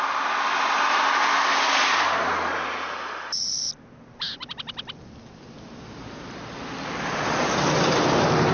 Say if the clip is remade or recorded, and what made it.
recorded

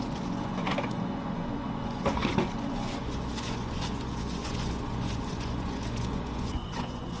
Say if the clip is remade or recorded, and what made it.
remade, vocoder, Vocos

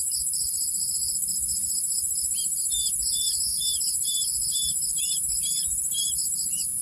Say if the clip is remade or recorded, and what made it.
recorded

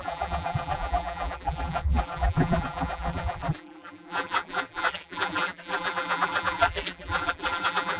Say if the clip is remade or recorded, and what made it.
remade, vocoder, BigVGAN v2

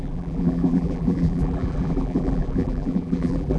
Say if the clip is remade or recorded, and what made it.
remade, vocoder, BigVGAN v2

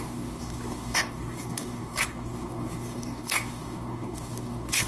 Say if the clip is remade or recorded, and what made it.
remade, codec, DAC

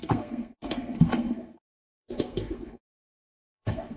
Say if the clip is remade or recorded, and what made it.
remade, codec, SNAC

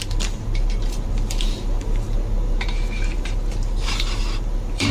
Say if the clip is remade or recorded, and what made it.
remade, vocoder, BigVGAN v2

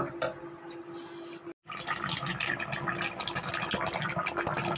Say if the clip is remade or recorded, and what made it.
remade, vocoder, BigVGAN v2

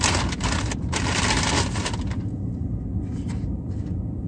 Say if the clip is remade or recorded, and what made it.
recorded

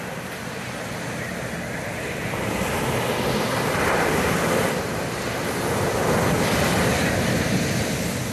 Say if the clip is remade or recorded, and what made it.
recorded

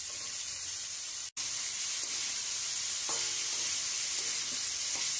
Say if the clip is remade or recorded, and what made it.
recorded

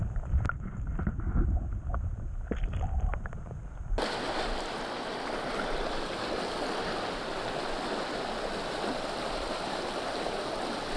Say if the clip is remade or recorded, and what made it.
recorded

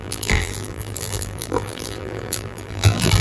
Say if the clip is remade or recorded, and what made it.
remade, vocoder, BigVGAN v2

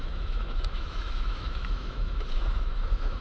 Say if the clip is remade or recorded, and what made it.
remade, autoencoder, DAC-VAE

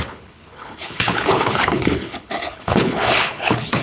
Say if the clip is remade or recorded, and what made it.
remade, codec, HILCodec